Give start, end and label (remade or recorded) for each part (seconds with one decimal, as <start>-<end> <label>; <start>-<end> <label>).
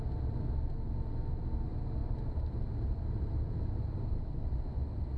0.0-2.0 recorded; 2.0-5.2 remade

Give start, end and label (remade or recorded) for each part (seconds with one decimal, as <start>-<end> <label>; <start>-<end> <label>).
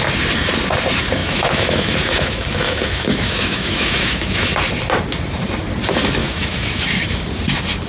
0.0-1.2 recorded; 1.2-4.5 remade; 4.5-6.2 recorded; 6.2-6.8 remade; 6.8-7.9 recorded